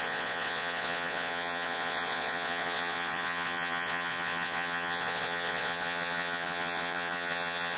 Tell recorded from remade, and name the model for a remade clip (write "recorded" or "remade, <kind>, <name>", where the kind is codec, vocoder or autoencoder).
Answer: remade, vocoder, Vocos